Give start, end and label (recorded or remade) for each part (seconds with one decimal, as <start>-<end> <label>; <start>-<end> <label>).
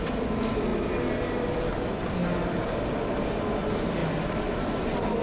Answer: 0.0-5.2 recorded